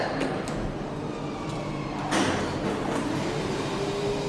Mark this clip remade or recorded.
recorded